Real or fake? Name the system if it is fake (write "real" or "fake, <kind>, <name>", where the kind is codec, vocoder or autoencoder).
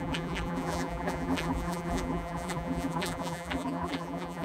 fake, vocoder, BigVGAN v2